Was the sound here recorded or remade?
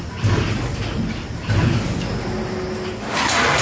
recorded